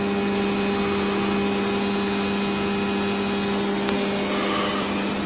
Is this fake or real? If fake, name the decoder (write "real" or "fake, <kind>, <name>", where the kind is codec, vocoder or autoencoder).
real